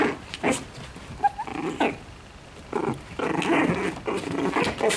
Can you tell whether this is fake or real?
real